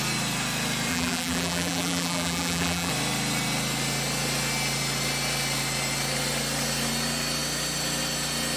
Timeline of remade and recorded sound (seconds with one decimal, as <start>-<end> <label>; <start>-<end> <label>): 0.0-0.9 recorded; 0.9-2.9 remade; 2.9-8.6 recorded